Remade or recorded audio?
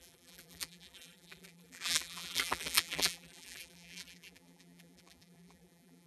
remade